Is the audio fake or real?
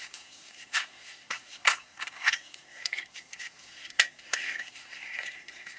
fake